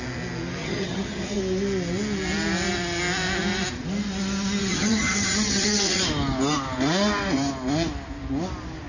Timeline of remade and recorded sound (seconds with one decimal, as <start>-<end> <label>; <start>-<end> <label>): 0.0-0.6 recorded; 0.6-1.4 remade; 1.4-4.6 recorded; 4.6-6.0 remade; 6.0-8.9 recorded